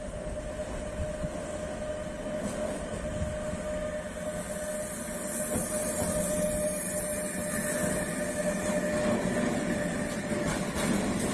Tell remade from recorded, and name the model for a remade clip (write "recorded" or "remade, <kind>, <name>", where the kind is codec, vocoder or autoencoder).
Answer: recorded